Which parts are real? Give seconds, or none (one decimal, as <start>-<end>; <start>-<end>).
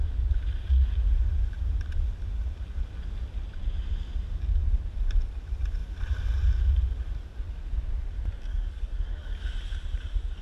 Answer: 0.0-8.5; 9.5-10.4